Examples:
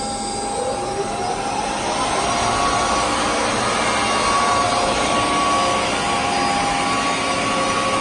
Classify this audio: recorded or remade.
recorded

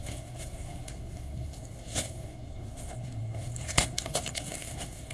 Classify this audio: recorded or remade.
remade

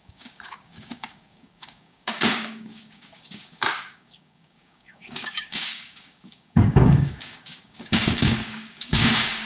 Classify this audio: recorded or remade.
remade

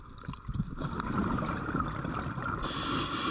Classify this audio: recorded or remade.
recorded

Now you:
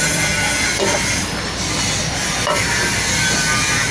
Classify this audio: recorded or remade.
remade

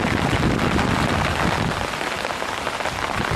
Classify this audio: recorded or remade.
recorded